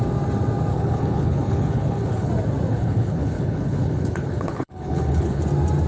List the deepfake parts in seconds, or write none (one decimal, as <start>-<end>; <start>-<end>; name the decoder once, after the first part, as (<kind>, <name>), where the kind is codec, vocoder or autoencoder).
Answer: 0.7-2.3 (codec, HILCodec); 2.7-5.4